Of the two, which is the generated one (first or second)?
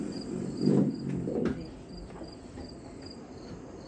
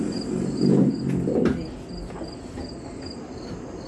first